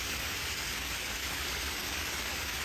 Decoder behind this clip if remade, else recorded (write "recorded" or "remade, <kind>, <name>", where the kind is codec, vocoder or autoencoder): remade, codec, DAC